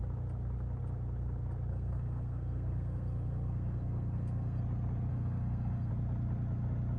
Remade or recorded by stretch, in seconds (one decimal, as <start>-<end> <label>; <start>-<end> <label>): 0.0-1.7 recorded; 1.7-4.6 remade; 4.6-5.1 recorded; 5.1-5.9 remade; 5.9-7.0 recorded